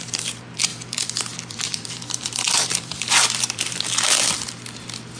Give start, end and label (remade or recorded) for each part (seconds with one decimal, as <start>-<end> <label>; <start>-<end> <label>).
0.0-0.7 recorded; 0.7-3.8 remade; 3.8-5.2 recorded